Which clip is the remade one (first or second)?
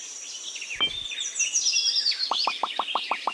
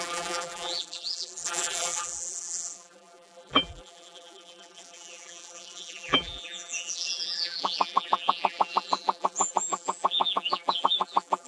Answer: second